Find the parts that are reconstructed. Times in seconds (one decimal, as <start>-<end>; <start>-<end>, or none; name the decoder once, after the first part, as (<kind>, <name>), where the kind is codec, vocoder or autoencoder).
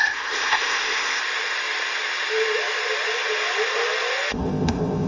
0.0-1.2 (codec, ZipCodec); 4.3-5.1